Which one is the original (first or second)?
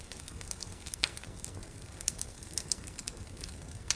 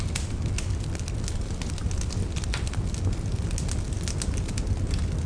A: second